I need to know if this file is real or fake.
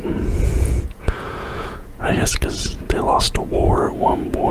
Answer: fake